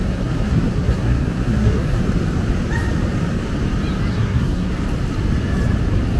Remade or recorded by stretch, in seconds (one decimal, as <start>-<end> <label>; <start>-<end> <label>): 0.0-2.0 remade; 2.0-4.1 recorded; 4.1-4.7 remade; 4.7-6.2 recorded